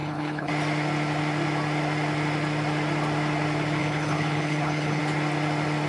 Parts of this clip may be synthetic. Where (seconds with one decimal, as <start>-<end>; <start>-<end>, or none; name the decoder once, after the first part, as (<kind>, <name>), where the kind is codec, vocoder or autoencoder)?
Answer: 0.0-0.5 (codec, HILCodec); 3.8-5.0